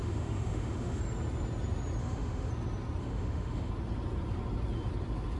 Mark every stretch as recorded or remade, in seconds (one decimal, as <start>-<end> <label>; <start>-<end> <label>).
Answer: 0.0-1.0 remade; 1.0-2.0 recorded; 2.0-2.5 remade; 2.5-3.0 recorded; 3.0-3.7 remade; 3.7-5.4 recorded